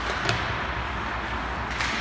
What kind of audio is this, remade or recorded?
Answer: recorded